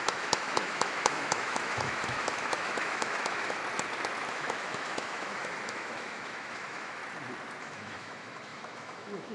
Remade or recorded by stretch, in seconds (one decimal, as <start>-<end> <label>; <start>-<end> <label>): 0.0-3.6 remade; 3.6-4.3 recorded; 4.3-7.0 remade; 7.0-7.6 recorded; 7.6-9.3 remade